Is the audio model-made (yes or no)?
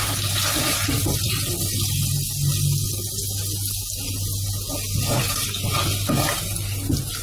no